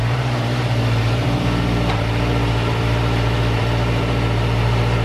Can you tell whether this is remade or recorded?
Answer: remade